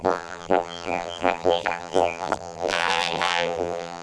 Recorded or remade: remade